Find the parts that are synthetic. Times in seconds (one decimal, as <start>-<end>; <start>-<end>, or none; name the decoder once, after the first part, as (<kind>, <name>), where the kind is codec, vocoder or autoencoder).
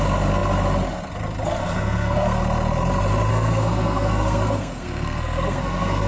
1.6-2.4 (codec, SNAC); 3.3-6.1